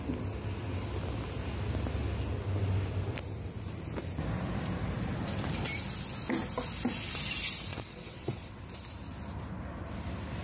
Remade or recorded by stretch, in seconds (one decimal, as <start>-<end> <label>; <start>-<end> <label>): 0.0-7.7 recorded; 7.7-8.6 remade; 8.6-10.4 recorded